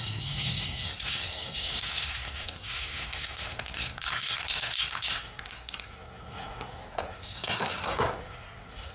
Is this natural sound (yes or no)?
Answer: no